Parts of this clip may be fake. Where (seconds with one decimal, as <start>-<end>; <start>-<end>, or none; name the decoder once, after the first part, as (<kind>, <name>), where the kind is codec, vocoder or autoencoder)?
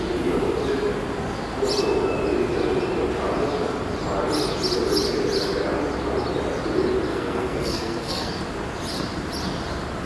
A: 7.1-8.4 (codec, SNAC)